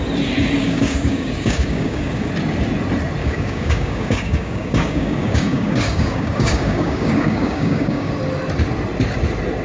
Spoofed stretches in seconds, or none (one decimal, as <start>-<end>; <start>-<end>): 0.6-2.3; 3.2-8.1